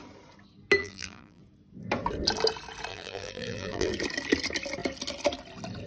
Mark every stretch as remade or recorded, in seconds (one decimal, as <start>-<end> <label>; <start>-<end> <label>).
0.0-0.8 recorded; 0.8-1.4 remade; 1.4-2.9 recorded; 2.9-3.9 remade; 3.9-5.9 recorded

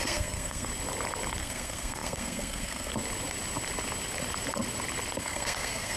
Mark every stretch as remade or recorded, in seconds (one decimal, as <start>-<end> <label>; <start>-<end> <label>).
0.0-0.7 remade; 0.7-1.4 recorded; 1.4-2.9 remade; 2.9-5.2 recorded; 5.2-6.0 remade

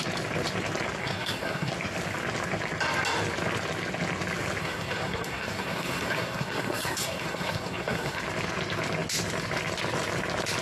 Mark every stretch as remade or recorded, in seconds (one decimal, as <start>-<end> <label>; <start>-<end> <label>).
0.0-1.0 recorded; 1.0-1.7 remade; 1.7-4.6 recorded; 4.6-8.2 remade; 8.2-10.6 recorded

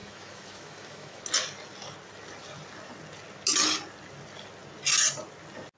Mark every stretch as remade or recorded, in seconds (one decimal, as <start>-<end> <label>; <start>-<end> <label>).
0.0-1.2 remade; 1.2-5.8 recorded

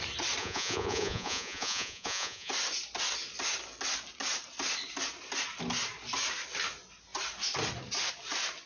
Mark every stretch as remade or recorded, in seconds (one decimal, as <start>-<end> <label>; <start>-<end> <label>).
0.0-0.4 recorded; 0.4-2.5 remade; 2.5-8.7 recorded

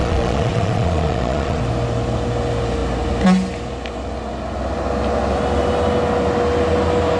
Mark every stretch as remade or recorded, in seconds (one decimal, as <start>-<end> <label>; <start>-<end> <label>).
0.0-1.6 remade; 1.6-7.2 recorded